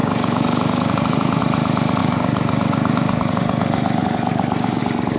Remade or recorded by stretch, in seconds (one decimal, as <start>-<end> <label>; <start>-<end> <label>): 0.0-1.4 remade; 1.4-2.0 recorded; 2.0-4.8 remade; 4.8-5.2 recorded